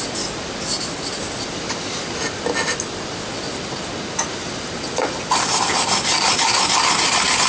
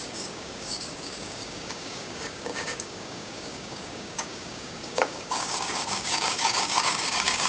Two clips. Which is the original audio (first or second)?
first